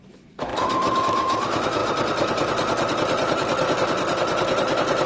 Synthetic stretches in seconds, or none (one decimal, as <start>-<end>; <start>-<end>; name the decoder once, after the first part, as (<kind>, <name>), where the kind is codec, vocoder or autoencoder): 0.0-1.8 (autoencoder, DAC-VAE)